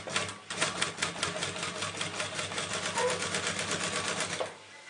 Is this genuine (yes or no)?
yes